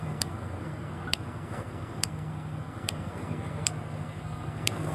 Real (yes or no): no